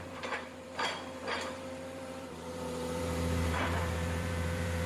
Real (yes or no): no